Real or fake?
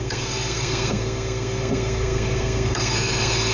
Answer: fake